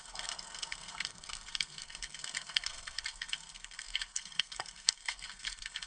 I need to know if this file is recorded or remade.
remade